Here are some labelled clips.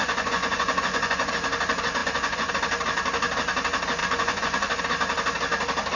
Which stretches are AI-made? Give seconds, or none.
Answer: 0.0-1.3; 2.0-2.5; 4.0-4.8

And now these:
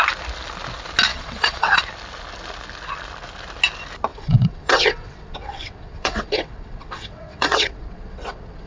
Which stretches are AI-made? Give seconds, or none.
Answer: 1.1-1.8; 4.1-8.7

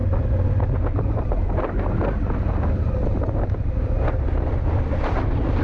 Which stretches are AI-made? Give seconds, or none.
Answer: none

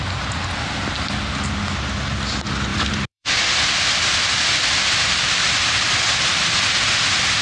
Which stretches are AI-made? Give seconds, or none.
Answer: 2.7-6.4

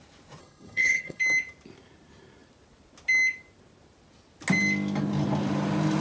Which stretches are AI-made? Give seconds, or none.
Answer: 0.4-1.2